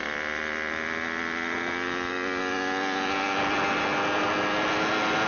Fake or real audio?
real